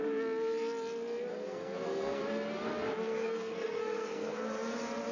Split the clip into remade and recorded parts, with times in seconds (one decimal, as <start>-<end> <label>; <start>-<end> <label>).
0.0-1.3 recorded; 1.3-2.2 remade; 2.2-2.9 recorded; 2.9-4.4 remade; 4.4-5.1 recorded